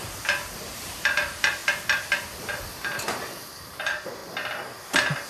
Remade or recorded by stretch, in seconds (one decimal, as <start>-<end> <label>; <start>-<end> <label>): 0.0-1.6 remade; 1.6-2.4 recorded; 2.4-4.2 remade; 4.2-5.3 recorded